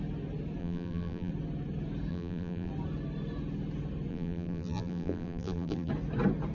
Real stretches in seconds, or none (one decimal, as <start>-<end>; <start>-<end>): 0.0-0.6; 1.3-2.1; 2.7-4.1; 5.9-6.5